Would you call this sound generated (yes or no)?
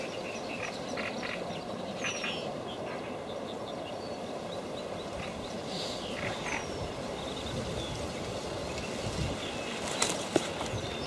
no